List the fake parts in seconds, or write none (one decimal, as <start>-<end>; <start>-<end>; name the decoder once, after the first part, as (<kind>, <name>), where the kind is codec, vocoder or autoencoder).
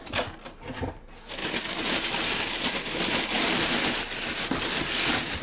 none